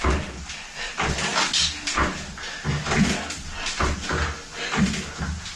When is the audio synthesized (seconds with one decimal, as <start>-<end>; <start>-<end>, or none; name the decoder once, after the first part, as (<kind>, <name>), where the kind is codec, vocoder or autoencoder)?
none